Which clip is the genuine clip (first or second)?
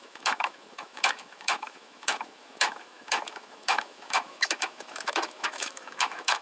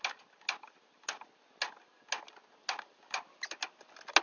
second